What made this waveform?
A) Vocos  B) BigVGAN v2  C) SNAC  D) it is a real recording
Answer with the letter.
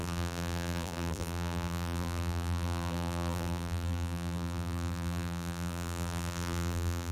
B